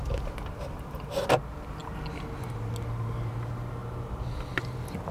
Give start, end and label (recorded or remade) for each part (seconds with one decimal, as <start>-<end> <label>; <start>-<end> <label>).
0.0-5.1 recorded